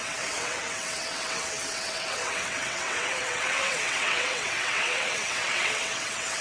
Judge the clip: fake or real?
fake